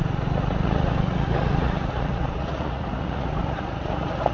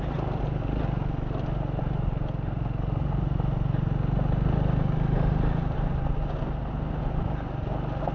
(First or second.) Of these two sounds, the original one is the second